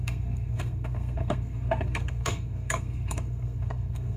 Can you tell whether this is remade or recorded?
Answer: remade